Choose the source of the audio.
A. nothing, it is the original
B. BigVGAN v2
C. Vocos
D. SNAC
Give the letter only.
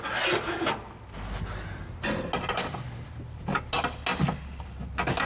A